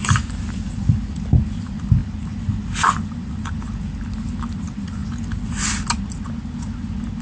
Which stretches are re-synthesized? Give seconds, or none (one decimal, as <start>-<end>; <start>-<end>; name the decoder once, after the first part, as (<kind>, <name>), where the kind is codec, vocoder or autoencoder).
none

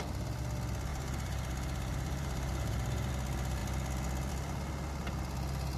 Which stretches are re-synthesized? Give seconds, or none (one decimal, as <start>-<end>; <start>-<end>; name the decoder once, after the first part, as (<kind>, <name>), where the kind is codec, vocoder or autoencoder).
0.9-3.1 (vocoder, BigVGAN v2)

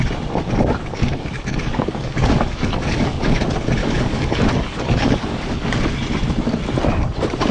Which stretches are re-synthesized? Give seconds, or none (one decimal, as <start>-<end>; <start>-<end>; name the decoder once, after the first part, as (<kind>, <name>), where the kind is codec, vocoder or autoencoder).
0.8-3.4 (codec, DAC); 3.8-5.7

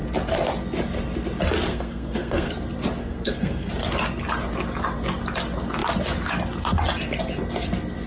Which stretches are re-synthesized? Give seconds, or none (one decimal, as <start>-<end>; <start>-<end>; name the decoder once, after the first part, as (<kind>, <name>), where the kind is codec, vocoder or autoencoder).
1.7-2.5 (codec, SNAC); 3.0-3.7

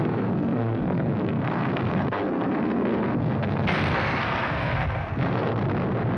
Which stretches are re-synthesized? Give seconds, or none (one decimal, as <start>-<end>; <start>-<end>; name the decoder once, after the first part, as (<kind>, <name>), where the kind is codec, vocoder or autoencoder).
0.0-5.6 (codec, SNAC)

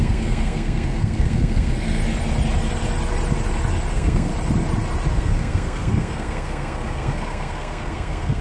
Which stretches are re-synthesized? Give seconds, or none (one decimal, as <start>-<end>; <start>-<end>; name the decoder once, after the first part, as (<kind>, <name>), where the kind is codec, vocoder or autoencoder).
0.0-2.0 (codec, SNAC); 3.9-4.3; 5.1-8.4

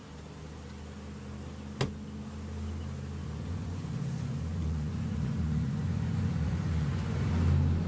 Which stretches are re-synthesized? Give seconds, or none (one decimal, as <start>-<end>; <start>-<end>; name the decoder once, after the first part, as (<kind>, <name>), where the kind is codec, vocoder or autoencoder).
3.2-7.3 (vocoder, Vocos)